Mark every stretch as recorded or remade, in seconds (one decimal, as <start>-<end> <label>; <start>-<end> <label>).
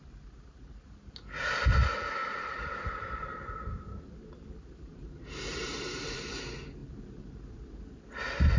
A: 0.0-2.2 recorded; 2.2-6.2 remade; 6.2-8.6 recorded